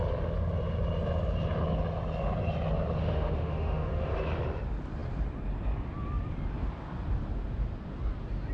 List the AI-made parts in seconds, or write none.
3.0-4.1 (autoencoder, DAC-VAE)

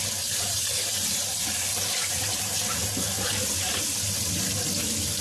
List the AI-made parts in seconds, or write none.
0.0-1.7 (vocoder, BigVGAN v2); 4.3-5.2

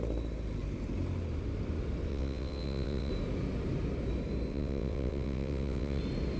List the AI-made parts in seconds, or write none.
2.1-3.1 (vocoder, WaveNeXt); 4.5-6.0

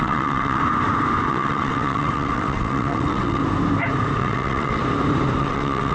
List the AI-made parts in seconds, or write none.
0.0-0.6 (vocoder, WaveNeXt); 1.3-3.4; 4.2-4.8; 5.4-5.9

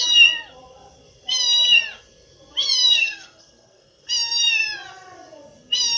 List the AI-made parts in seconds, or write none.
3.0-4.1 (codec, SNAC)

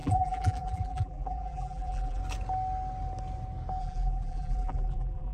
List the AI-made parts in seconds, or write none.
0.0-2.2 (vocoder, BigVGAN v2); 3.8-5.3

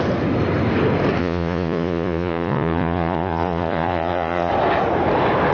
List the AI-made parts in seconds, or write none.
1.2-4.5 (vocoder, Vocos)